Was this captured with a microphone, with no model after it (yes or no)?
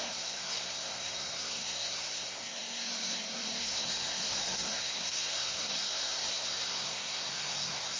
no